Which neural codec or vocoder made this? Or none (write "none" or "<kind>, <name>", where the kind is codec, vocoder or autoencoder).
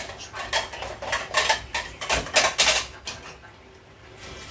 none